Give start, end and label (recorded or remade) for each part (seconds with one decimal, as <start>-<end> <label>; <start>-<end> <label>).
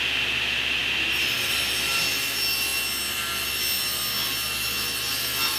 0.0-5.6 recorded